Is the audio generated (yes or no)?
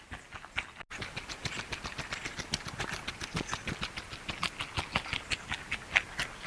no